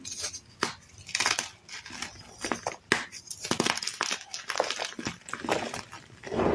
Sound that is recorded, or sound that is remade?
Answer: recorded